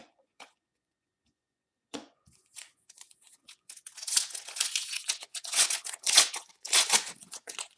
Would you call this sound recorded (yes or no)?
no